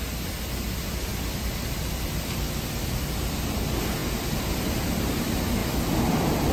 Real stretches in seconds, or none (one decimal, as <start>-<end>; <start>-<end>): 0.0-5.6